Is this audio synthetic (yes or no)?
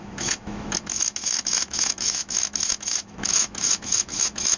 yes